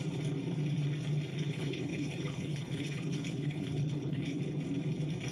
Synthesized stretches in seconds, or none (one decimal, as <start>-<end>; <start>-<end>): 1.3-4.4